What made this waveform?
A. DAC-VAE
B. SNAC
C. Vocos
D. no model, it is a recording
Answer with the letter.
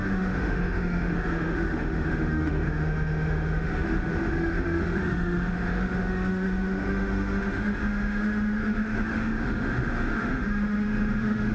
A